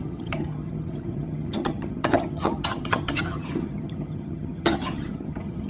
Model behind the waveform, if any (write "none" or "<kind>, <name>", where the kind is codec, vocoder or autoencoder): vocoder, HiFi-GAN